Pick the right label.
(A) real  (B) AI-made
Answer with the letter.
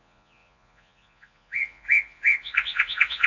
B